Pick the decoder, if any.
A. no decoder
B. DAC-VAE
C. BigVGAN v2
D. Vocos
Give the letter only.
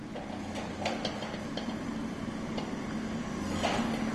A